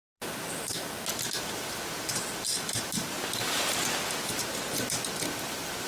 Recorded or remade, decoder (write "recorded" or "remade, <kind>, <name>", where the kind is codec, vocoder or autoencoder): recorded